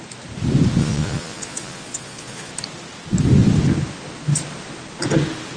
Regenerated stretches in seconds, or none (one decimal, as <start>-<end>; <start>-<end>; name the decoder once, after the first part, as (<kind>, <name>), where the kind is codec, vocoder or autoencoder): 0.8-2.5 (vocoder, Vocos)